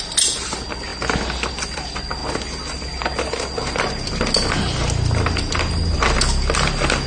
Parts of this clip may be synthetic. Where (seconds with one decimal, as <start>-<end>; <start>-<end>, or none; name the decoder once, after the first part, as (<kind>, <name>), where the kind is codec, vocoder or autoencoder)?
none